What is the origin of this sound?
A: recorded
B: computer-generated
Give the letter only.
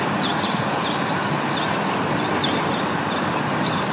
A